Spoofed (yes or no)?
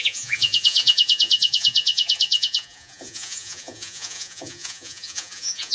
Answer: yes